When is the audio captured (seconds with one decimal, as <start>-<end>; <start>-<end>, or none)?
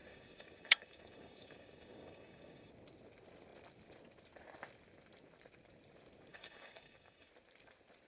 2.7-6.3; 7.3-8.1